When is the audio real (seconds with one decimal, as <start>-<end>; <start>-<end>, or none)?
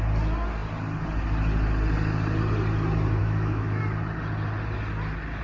0.0-3.2; 3.8-5.4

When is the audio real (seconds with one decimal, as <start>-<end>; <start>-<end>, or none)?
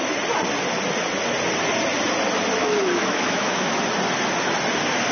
0.0-2.6; 3.8-5.1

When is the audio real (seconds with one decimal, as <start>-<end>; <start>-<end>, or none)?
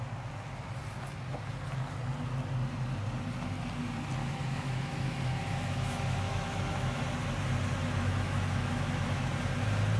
0.0-4.2; 7.0-7.8; 9.3-10.0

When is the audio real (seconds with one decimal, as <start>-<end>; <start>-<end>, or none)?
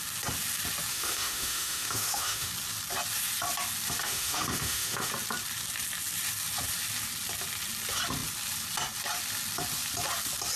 0.0-0.9; 2.5-4.0; 5.1-10.6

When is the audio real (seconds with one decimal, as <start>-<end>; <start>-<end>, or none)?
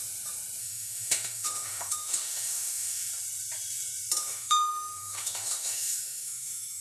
0.0-0.6; 3.1-4.2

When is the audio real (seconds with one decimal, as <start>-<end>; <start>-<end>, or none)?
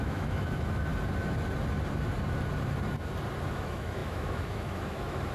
0.9-3.5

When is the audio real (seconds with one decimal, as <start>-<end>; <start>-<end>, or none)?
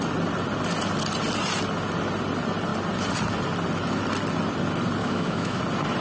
0.0-5.0; 5.6-6.0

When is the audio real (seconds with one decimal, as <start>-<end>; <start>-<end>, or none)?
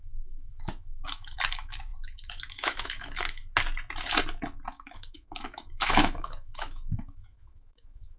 3.4-4.7